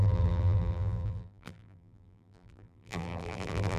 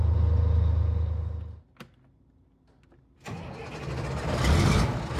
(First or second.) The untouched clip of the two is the second